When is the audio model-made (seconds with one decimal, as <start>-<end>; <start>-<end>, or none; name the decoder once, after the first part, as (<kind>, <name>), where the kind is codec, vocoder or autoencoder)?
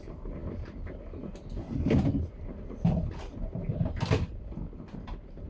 none